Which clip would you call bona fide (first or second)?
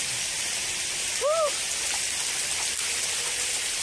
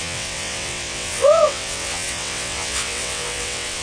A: first